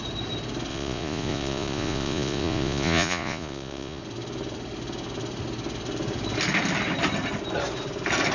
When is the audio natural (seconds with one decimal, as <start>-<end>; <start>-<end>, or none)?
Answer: 0.0-0.7; 4.0-8.3